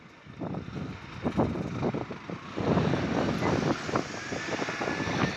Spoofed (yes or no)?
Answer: no